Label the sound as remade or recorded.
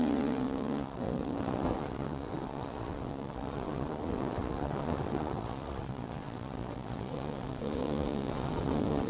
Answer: remade